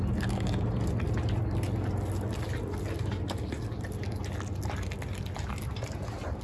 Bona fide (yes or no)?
yes